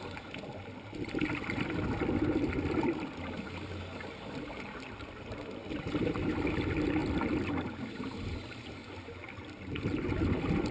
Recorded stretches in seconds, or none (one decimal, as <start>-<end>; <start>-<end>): 0.0-10.7